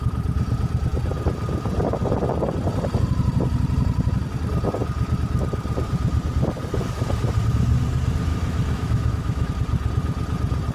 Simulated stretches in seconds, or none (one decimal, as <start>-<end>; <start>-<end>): 8.3-9.5